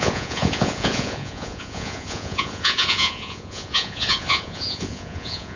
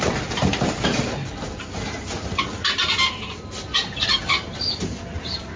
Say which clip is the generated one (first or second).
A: first